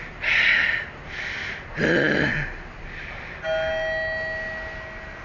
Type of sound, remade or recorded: recorded